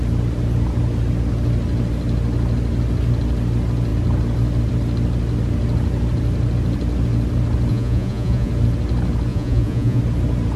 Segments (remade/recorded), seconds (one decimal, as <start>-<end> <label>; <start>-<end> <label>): 0.0-7.7 recorded; 7.7-8.5 remade; 8.5-9.3 recorded; 9.3-10.0 remade; 10.0-10.6 recorded

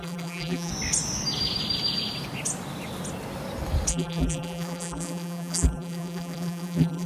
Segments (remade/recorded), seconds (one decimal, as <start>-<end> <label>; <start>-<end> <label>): 0.0-0.7 remade; 0.7-3.9 recorded; 3.9-7.1 remade

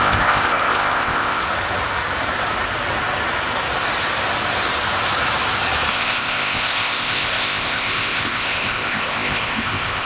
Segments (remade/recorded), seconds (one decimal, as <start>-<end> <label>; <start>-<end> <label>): 0.0-1.4 remade; 1.4-5.9 recorded; 5.9-10.1 remade